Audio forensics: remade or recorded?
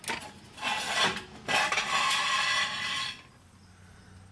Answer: recorded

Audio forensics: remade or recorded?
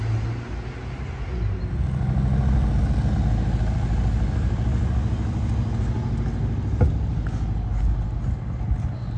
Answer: recorded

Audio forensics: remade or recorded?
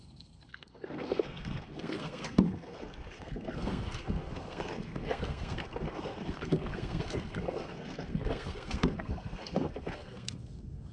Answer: remade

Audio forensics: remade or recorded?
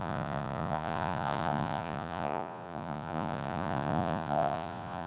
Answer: remade